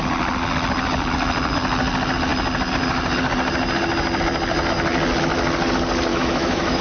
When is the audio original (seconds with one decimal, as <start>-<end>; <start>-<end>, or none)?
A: 0.0-6.1